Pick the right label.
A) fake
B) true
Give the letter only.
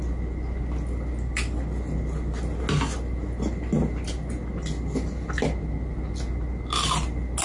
B